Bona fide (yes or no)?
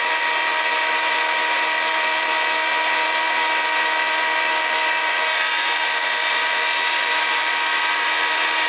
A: no